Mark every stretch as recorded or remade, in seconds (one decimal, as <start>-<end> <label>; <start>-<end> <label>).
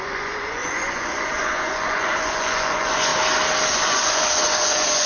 0.0-3.1 remade; 3.1-3.7 recorded; 3.7-5.1 remade